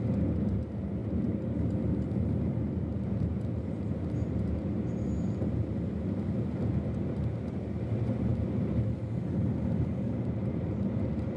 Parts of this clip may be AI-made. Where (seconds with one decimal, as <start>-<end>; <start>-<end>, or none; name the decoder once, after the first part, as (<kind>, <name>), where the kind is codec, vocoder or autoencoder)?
none